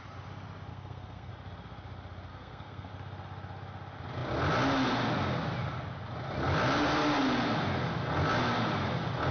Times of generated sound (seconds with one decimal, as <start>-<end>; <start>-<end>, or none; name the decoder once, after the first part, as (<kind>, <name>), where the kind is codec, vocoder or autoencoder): 0.7-1.3 (codec, SNAC); 2.3-2.9